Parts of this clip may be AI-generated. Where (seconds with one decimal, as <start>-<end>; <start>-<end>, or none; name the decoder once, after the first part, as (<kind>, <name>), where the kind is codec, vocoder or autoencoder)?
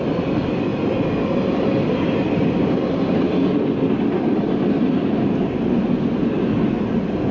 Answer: none